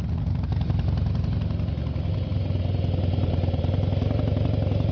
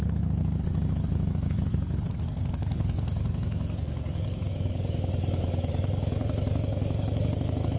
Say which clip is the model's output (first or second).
second